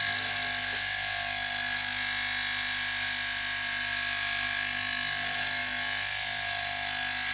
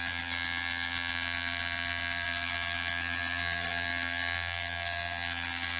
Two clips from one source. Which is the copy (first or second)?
second